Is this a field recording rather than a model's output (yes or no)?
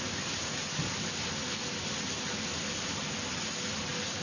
yes